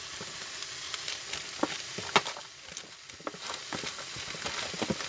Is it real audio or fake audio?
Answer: real